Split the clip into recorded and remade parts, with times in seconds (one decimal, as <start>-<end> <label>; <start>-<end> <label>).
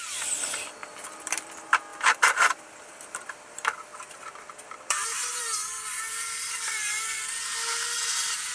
0.0-8.5 remade